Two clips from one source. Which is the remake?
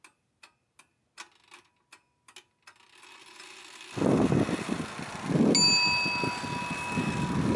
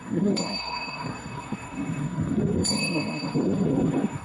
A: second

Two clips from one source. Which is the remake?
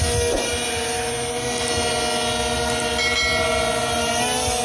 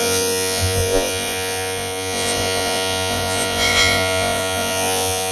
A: second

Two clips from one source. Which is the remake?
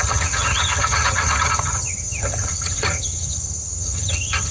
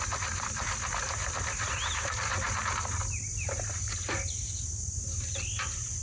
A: first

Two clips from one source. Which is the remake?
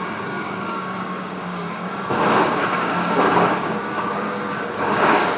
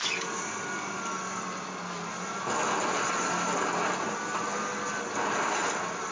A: first